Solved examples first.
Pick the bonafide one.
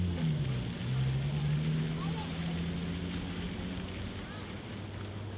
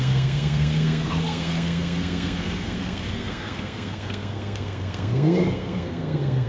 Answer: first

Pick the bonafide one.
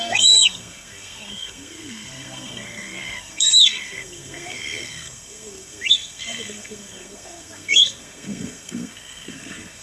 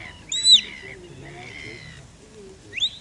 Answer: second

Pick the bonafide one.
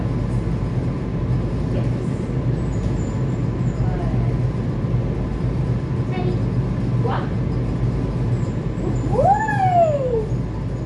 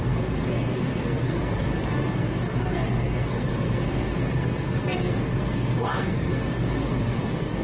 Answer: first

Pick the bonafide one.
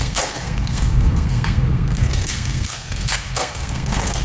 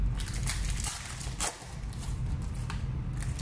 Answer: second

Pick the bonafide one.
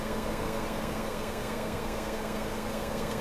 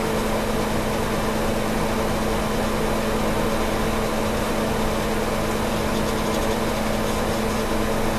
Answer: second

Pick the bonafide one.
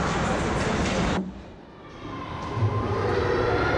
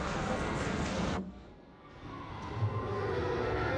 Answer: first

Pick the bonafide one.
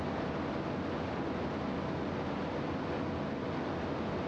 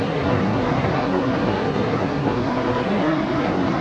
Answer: first